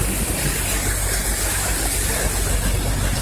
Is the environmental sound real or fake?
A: real